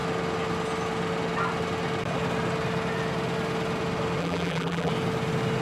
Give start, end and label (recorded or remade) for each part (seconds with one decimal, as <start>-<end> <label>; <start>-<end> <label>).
0.0-4.2 recorded; 4.2-4.9 remade; 4.9-5.6 recorded